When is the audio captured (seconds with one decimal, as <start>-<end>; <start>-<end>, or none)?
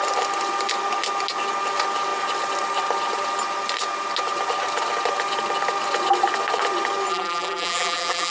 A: 0.0-7.1